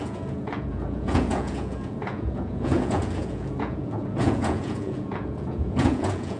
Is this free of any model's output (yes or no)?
no